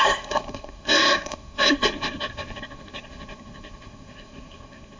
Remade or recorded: remade